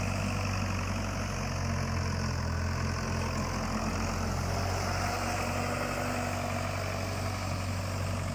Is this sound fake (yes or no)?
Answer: no